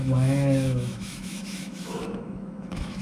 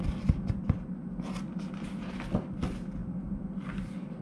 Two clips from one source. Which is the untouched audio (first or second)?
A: second